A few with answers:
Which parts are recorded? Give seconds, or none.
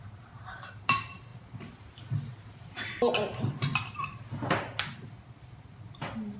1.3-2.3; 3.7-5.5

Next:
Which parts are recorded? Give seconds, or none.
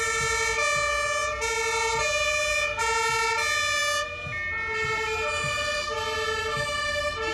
0.0-7.3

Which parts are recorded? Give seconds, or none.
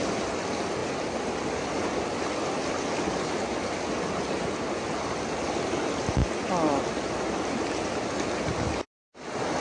0.0-9.6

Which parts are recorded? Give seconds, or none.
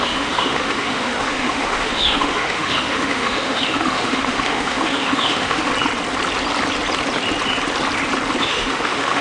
5.7-8.4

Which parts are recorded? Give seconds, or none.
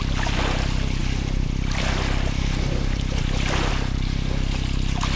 0.0-1.0; 3.7-5.2